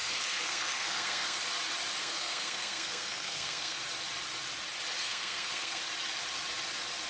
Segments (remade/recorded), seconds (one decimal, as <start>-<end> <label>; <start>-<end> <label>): 0.0-1.4 remade; 1.4-2.0 recorded; 2.0-3.8 remade; 3.8-5.0 recorded; 5.0-5.8 remade; 5.8-7.1 recorded